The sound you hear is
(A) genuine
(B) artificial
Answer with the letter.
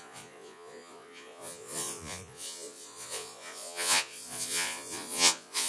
B